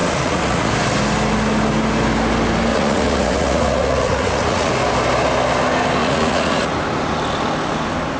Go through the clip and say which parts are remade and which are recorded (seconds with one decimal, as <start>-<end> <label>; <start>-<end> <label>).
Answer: 0.0-0.7 remade; 0.7-2.7 recorded; 2.7-4.7 remade; 4.7-6.0 recorded; 6.0-6.7 remade; 6.7-8.2 recorded